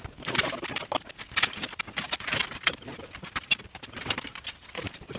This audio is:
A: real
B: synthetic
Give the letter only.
A